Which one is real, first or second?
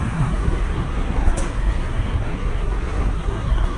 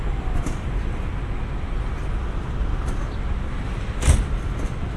second